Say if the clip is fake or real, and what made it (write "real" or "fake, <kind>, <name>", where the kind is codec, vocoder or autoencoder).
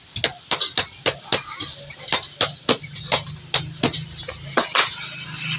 real